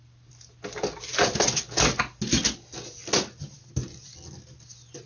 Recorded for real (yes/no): yes